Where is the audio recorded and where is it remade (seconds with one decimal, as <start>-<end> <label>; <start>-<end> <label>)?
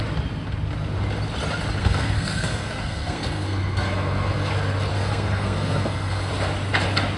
0.0-1.8 recorded; 1.8-4.5 remade; 4.5-4.9 recorded; 4.9-6.3 remade; 6.3-7.2 recorded